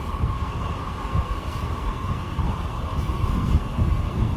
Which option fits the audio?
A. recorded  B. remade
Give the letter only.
B